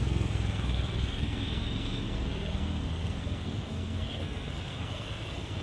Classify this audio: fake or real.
fake